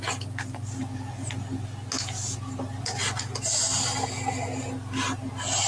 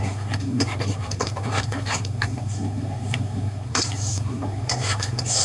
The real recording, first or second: first